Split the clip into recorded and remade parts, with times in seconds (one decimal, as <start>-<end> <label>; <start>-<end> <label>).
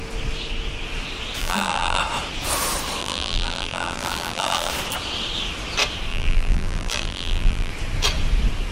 0.0-1.4 recorded; 1.4-2.0 remade; 2.0-3.0 recorded; 3.0-4.7 remade; 4.7-6.1 recorded; 6.1-7.7 remade; 7.7-8.7 recorded